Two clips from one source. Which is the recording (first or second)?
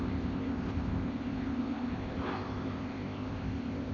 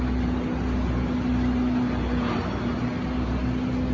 second